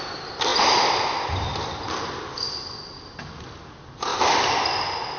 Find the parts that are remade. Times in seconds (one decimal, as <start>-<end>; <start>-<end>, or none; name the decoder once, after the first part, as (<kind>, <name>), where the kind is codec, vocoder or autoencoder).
4.1-5.2 (vocoder, BigVGAN v2)